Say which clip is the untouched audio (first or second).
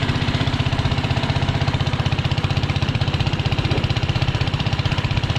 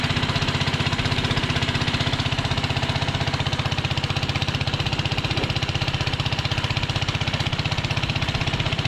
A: second